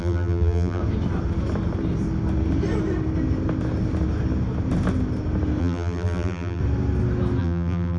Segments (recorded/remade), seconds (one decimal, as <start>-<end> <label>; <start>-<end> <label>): 0.0-0.8 remade; 0.8-5.6 recorded; 5.6-6.6 remade; 6.6-7.4 recorded; 7.4-8.0 remade